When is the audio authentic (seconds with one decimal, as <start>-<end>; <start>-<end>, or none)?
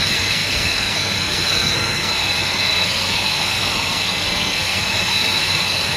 none